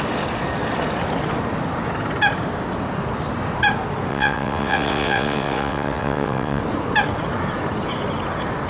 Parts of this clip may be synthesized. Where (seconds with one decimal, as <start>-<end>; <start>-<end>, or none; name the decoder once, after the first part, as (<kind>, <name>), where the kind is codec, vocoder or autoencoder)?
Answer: 4.1-6.6 (vocoder, WaveNeXt)